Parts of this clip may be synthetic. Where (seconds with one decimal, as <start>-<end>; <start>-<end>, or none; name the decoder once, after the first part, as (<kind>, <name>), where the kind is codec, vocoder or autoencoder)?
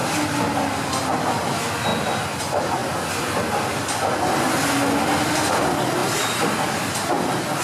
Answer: none